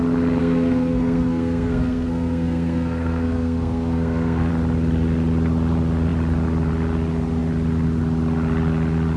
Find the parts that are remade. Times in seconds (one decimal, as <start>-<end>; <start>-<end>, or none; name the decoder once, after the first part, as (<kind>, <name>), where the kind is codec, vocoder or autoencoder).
0.4-4.5 (codec, SNAC)